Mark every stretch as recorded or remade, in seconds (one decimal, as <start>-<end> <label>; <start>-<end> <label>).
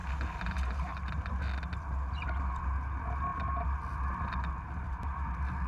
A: 0.0-5.7 recorded